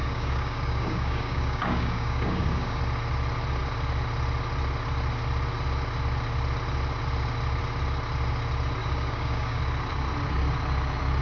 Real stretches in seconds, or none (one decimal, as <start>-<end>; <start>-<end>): 2.8-8.8; 9.6-11.2